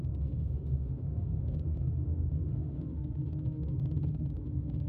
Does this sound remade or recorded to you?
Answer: remade